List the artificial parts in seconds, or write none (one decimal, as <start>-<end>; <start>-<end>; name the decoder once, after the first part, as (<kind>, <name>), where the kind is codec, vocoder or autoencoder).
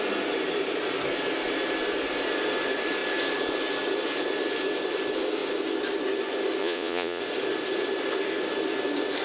6.6-7.2 (vocoder, Vocos)